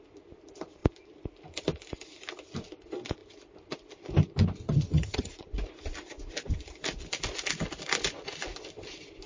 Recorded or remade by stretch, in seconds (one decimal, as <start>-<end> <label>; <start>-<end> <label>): 0.0-4.6 recorded; 4.6-5.3 remade; 5.3-9.3 recorded